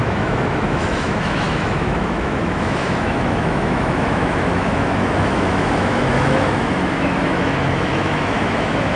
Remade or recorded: remade